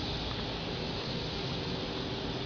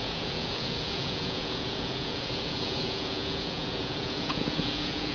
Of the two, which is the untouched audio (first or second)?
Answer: first